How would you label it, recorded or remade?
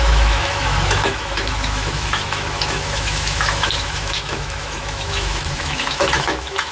remade